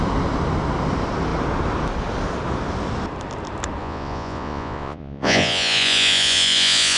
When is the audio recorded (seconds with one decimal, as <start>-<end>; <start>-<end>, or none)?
0.0-3.8